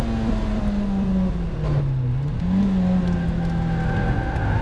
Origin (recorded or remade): recorded